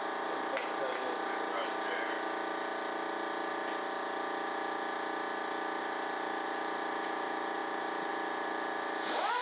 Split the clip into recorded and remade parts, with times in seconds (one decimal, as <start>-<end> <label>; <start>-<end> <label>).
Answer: 0.0-0.8 remade; 0.8-5.8 recorded; 5.8-9.4 remade